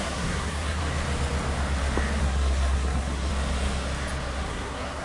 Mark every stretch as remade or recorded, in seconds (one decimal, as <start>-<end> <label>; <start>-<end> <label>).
0.0-0.8 remade; 0.8-2.2 recorded; 2.2-3.3 remade; 3.3-4.5 recorded; 4.5-5.0 remade